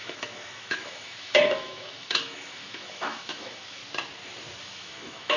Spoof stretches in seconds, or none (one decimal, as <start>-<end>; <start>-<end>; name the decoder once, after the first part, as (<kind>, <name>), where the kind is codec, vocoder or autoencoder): 0.0-3.8 (autoencoder, DAC-VAE); 4.6-5.4